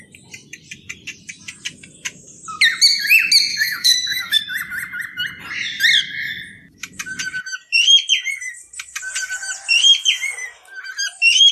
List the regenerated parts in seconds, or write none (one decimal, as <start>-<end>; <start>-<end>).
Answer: 3.5-4.4